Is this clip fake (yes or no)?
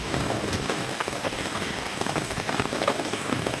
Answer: yes